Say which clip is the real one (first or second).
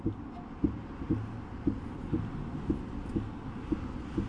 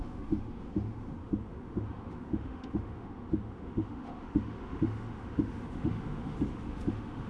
first